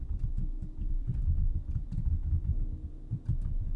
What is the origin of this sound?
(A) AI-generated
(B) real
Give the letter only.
A